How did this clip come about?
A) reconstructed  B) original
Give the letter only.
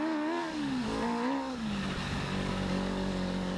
A